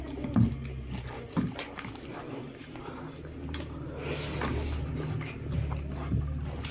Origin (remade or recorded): recorded